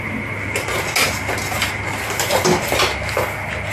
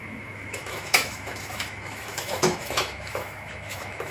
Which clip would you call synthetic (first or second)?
second